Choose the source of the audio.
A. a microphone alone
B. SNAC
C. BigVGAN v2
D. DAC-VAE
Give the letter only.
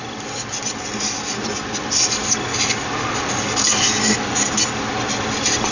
A